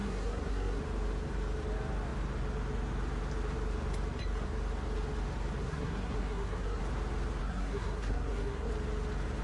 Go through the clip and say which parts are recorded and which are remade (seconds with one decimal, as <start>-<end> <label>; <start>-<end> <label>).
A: 0.0-0.8 remade; 0.8-5.6 recorded; 5.6-6.8 remade; 6.8-7.4 recorded; 7.4-8.7 remade; 8.7-9.4 recorded